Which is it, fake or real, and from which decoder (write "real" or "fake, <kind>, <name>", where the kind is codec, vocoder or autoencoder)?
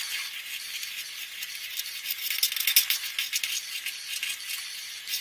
real